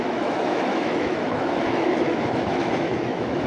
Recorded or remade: remade